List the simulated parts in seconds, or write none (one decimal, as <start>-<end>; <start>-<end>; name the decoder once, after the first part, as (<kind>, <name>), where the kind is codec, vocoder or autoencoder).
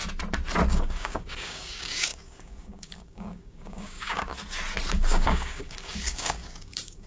0.7-4.3 (codec, DAC); 4.9-7.1